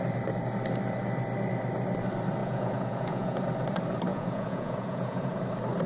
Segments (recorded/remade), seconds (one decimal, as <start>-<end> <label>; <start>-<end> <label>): 0.0-2.4 recorded; 2.4-3.4 remade; 3.4-4.1 recorded; 4.1-5.4 remade; 5.4-5.9 recorded